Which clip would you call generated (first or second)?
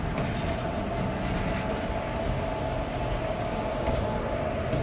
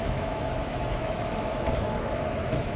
second